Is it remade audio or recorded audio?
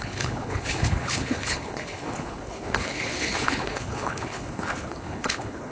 remade